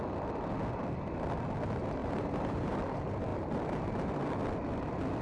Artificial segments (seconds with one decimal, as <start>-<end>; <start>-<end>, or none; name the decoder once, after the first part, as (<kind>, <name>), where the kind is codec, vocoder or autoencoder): 2.0-2.8 (vocoder, BigVGAN v2); 3.3-3.9